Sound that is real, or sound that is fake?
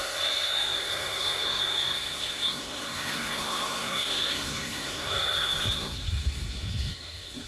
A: fake